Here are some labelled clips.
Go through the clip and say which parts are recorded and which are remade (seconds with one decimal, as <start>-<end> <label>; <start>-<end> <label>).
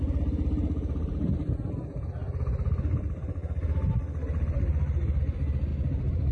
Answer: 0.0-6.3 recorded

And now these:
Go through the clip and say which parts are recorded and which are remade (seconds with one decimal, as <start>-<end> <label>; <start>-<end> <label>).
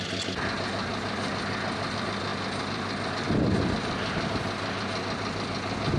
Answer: 0.0-6.0 recorded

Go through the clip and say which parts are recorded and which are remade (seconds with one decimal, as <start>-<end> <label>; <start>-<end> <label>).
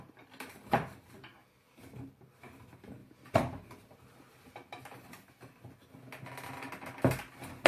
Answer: 0.0-1.4 recorded; 1.4-2.5 remade; 2.5-7.7 recorded